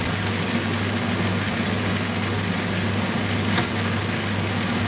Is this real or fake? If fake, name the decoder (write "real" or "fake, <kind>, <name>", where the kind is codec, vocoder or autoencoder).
real